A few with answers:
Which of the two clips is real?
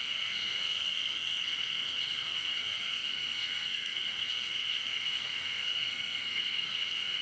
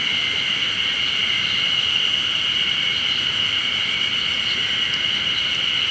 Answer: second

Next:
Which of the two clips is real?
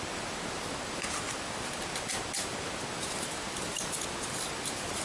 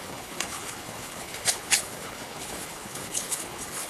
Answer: first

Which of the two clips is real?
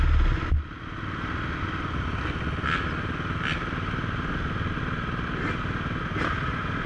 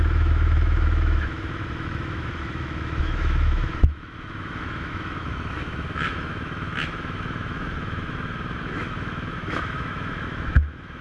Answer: first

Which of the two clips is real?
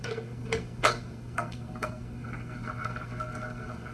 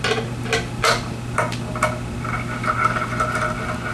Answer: second